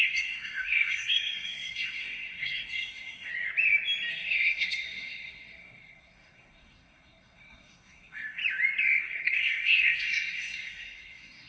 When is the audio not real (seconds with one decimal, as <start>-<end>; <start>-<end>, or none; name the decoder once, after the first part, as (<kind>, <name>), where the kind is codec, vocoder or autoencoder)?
0.0-3.3 (codec, SNAC); 4.1-8.4; 9.0-11.5